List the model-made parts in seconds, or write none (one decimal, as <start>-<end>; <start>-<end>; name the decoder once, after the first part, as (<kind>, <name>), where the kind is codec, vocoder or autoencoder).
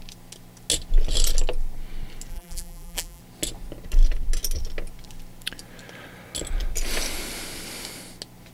2.3-3.2 (vocoder, BigVGAN v2)